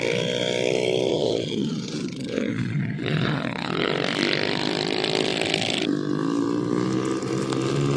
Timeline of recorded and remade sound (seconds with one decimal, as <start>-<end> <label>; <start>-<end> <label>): 0.0-1.1 recorded; 1.1-3.9 remade; 3.9-8.0 recorded